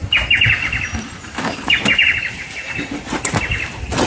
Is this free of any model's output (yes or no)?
yes